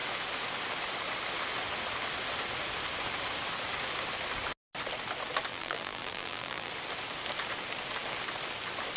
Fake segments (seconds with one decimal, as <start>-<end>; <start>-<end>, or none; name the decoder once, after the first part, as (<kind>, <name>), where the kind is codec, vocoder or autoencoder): 5.5-6.7 (vocoder, BigVGAN v2)